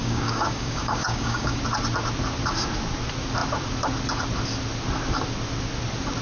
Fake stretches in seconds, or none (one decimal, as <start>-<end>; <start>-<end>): 0.0-1.6